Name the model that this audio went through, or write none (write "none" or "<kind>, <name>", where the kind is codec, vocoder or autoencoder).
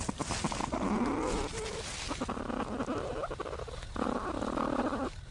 none